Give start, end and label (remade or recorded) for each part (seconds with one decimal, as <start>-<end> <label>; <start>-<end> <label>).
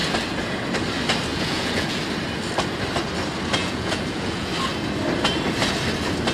0.0-1.3 recorded; 1.3-2.0 remade; 2.0-3.6 recorded; 3.6-4.5 remade; 4.5-6.3 recorded